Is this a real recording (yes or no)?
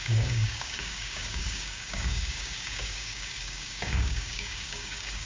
no